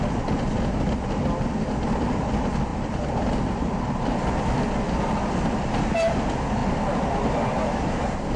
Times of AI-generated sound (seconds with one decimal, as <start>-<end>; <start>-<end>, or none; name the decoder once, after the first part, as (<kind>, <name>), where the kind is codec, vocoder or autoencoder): 2.7-4.1 (vocoder, BigVGAN v2)